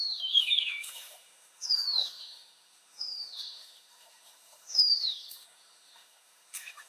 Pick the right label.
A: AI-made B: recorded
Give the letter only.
A